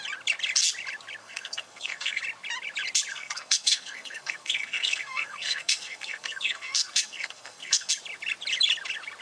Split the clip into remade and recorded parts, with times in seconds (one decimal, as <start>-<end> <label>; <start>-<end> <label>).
0.0-1.2 recorded; 1.2-2.2 remade; 2.2-3.1 recorded; 3.1-7.9 remade; 7.9-9.2 recorded